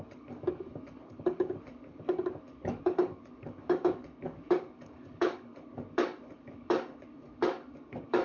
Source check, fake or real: fake